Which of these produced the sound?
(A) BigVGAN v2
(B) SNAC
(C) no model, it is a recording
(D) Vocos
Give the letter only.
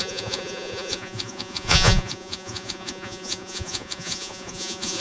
D